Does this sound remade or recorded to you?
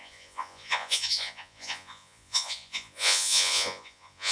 remade